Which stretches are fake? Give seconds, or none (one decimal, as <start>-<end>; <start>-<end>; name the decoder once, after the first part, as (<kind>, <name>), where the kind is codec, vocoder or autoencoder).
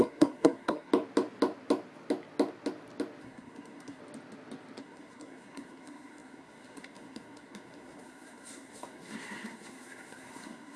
0.0-0.9 (codec, SNAC); 3.2-4.0; 4.8-10.8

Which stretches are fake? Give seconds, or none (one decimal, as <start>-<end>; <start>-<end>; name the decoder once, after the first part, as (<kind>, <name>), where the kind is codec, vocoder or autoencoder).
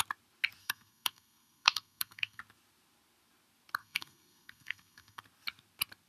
0.6-2.4 (codec, SNAC); 3.8-5.2